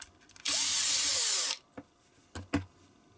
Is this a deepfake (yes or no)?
no